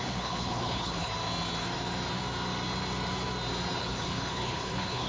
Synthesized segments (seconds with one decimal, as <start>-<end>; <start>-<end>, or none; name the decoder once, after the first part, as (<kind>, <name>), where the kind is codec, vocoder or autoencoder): 0.0-1.1 (codec, HILCodec); 3.8-5.1